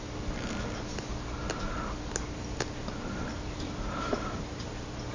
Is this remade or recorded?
recorded